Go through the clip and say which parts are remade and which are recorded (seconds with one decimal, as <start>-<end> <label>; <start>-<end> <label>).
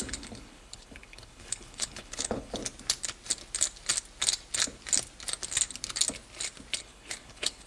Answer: 0.0-2.6 remade; 2.6-6.8 recorded; 6.8-7.7 remade